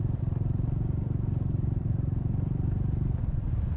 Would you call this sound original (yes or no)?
yes